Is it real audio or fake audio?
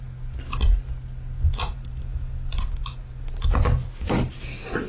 real